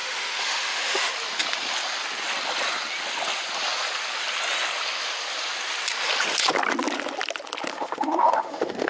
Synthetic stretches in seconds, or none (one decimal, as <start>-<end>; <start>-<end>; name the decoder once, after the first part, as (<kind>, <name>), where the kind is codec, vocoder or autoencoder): 0.0-1.1 (autoencoder, DAC-VAE); 7.7-8.9